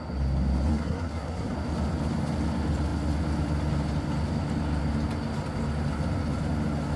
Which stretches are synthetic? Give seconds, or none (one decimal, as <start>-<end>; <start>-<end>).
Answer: 0.7-1.5